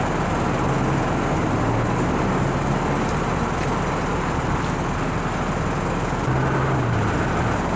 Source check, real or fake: real